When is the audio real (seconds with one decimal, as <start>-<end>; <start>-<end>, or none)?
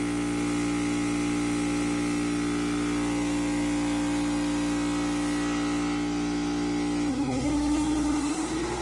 0.0-7.1